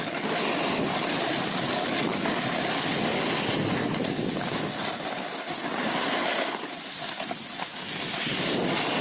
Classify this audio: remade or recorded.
recorded